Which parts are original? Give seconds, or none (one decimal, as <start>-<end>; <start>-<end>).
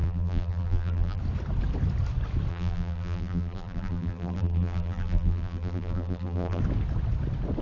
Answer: 1.2-2.5; 6.6-7.6